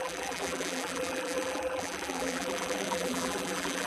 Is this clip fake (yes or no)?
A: yes